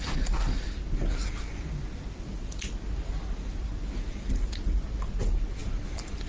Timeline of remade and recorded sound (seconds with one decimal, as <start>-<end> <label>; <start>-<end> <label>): 0.0-6.3 recorded